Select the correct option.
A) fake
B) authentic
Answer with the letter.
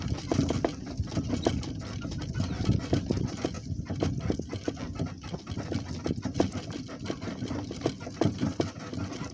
B